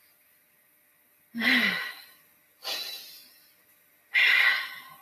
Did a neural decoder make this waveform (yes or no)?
no